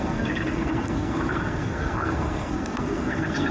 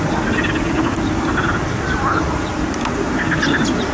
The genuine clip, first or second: second